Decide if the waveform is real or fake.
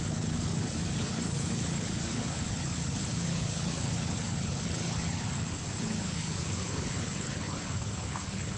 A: fake